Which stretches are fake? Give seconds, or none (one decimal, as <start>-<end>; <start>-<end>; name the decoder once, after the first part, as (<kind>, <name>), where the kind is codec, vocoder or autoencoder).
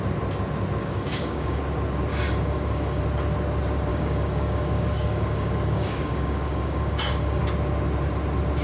0.8-1.6 (codec, DAC); 2.1-3.0; 3.9-7.4